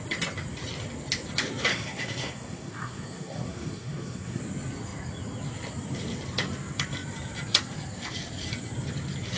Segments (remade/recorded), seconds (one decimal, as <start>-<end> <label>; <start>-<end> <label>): 0.0-1.7 recorded; 1.7-4.4 remade; 4.4-9.4 recorded